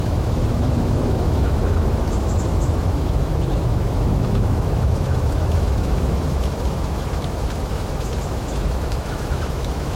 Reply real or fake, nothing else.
fake